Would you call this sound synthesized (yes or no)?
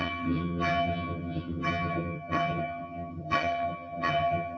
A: yes